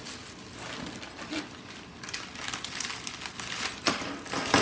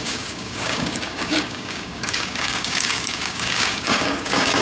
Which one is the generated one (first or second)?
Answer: second